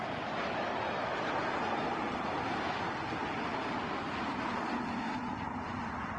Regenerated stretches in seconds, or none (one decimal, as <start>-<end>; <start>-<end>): none